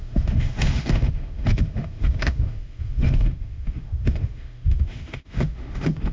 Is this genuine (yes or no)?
no